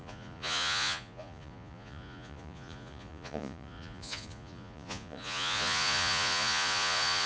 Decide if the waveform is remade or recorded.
remade